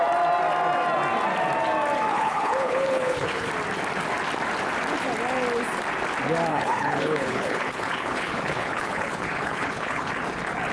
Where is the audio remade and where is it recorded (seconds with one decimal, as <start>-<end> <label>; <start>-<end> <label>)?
0.0-2.1 recorded; 2.1-3.5 remade; 3.5-6.5 recorded; 6.5-10.1 remade; 10.1-10.7 recorded